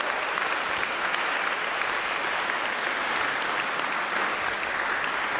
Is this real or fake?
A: real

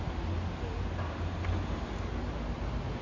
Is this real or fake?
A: real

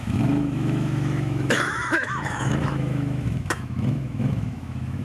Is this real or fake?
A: fake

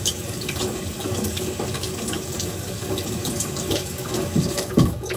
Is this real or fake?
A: fake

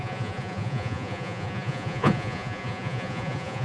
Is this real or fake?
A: fake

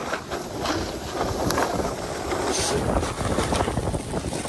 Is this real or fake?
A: real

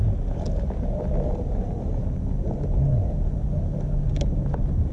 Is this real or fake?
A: real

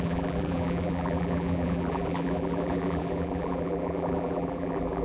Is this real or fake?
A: fake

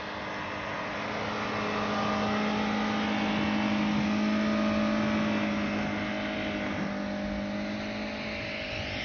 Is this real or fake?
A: real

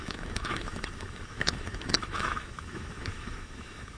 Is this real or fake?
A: fake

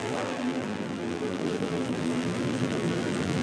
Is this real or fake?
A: fake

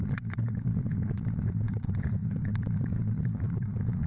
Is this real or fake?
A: fake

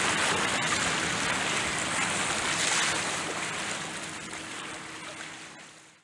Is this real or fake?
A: real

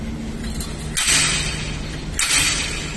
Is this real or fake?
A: real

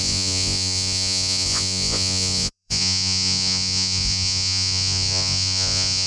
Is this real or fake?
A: fake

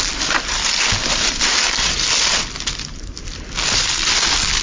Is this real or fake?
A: real